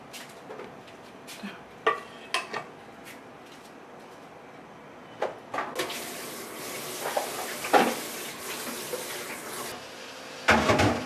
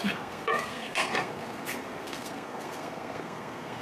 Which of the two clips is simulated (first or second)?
second